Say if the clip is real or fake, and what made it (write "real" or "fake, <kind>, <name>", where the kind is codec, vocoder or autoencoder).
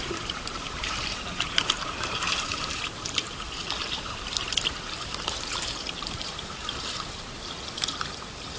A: fake, vocoder, BigVGAN v2